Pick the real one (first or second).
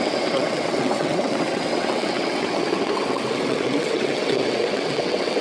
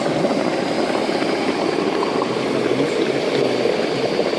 second